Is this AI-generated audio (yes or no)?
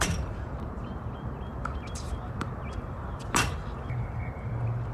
yes